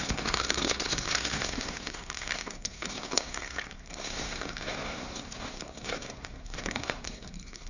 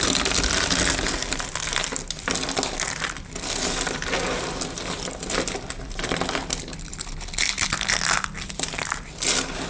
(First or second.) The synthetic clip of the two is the first